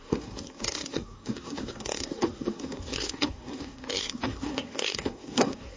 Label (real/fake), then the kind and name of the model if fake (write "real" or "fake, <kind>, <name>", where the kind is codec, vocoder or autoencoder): fake, codec, SNAC